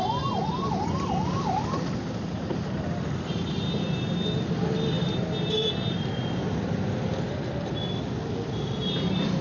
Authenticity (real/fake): real